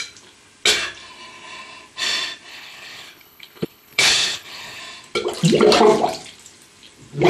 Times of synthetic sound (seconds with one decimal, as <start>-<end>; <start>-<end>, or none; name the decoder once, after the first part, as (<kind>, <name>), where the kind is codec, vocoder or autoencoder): 2.5-4.8 (codec, HILCodec)

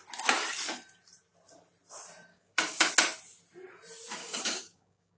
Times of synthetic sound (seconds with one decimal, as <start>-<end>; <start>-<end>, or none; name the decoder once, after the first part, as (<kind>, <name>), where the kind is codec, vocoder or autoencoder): 2.3-2.9 (codec, DAC); 4.2-5.2